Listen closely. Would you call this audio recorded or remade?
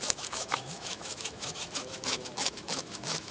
remade